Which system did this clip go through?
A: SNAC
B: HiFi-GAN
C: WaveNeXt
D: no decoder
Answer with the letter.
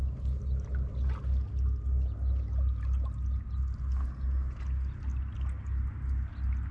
D